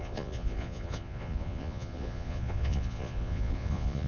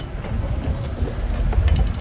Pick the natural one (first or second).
second